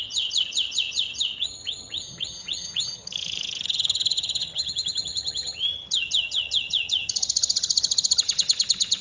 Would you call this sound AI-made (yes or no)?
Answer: yes